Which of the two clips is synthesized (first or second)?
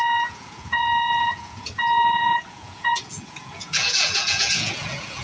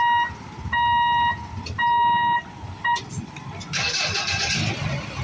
first